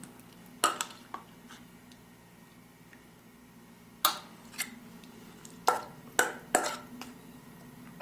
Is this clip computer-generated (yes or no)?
no